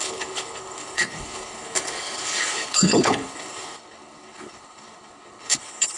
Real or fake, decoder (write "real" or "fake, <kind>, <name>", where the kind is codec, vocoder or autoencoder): fake, codec, HILCodec